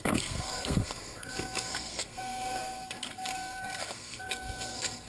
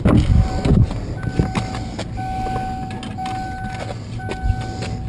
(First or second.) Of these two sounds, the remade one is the first